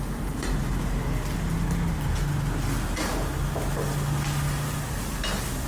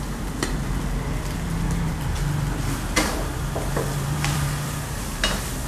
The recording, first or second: first